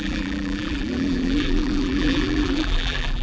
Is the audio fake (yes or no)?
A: yes